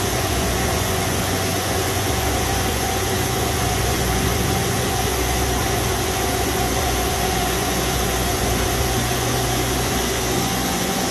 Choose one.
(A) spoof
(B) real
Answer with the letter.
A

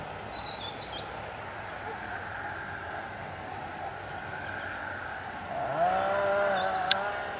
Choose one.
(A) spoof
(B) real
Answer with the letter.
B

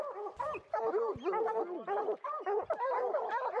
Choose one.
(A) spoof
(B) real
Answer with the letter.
B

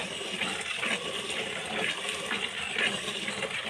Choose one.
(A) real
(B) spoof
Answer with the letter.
A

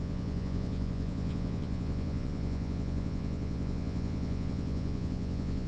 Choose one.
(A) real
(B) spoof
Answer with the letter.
B